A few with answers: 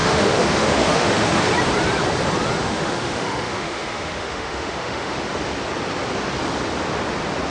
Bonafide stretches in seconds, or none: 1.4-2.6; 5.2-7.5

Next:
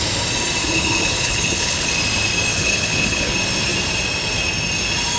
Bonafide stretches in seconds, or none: 0.0-0.6; 1.9-2.5; 3.3-5.2

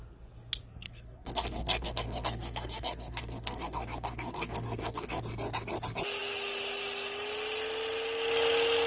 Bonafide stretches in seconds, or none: 0.0-0.7; 5.2-8.9

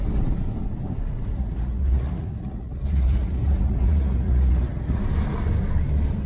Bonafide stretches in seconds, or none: 0.0-1.3; 5.0-6.3

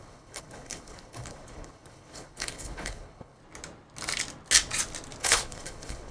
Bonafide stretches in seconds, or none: 3.4-5.2

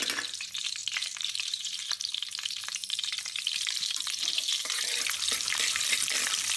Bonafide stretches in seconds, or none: 0.0-0.8; 4.8-6.6

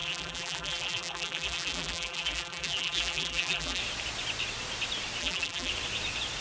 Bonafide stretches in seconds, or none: 3.8-5.2; 5.7-6.4